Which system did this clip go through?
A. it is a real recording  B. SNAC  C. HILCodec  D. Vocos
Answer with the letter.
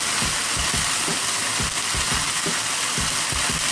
A